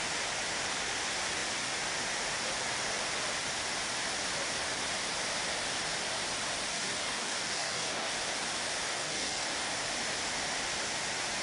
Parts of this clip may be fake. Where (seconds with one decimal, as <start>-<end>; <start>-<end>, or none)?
6.7-8.1; 8.9-9.7